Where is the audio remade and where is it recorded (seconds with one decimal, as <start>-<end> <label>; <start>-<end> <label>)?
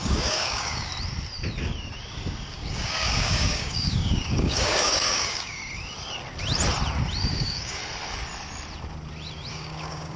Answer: 0.0-0.9 remade; 0.9-2.5 recorded; 2.5-5.6 remade; 5.6-7.3 recorded; 7.3-7.8 remade; 7.8-9.5 recorded; 9.5-10.2 remade